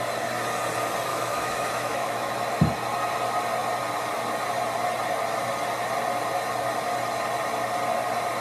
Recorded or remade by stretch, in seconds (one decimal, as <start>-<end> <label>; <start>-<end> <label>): 0.0-1.1 recorded; 1.1-2.3 remade; 2.3-8.4 recorded